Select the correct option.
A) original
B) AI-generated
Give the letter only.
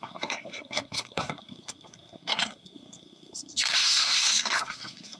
B